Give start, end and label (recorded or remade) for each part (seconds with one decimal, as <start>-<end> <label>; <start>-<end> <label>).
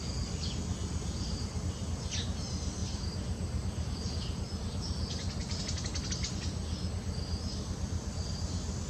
0.0-0.8 recorded; 0.8-1.4 remade; 1.4-2.8 recorded; 2.8-5.6 remade; 5.6-8.9 recorded